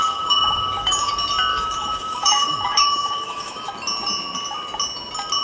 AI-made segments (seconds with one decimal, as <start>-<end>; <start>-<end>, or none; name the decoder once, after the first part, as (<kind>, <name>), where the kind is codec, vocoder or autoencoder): 0.0-1.1 (autoencoder, DAC-VAE); 1.5-3.7